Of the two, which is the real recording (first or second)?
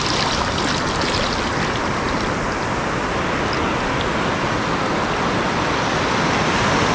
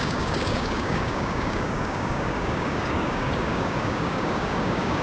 first